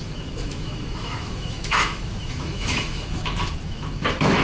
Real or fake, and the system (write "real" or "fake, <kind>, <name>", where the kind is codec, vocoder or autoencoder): fake, autoencoder, DAC-VAE